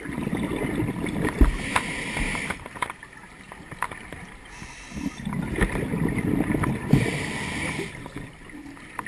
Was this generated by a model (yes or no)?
no